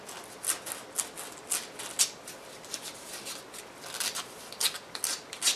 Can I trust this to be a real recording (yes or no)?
yes